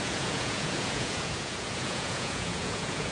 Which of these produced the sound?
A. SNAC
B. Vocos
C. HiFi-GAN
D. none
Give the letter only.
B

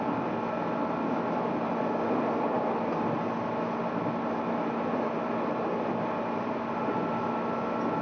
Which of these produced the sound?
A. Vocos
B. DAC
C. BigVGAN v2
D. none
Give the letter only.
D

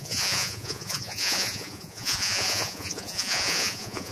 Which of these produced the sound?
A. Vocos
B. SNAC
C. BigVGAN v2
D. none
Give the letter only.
A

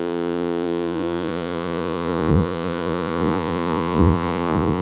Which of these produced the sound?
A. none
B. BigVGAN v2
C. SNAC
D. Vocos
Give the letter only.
D